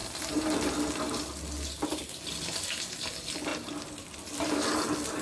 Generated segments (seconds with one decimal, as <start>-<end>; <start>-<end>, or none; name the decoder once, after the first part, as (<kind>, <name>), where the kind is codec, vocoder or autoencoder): none